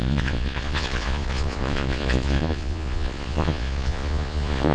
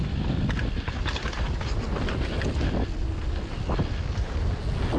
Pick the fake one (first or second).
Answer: first